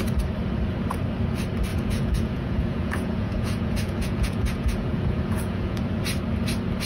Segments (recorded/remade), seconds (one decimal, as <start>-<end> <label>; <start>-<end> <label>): 0.0-1.7 recorded; 1.7-5.8 remade; 5.8-6.9 recorded